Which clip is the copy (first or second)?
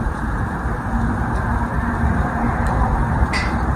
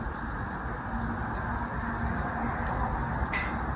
first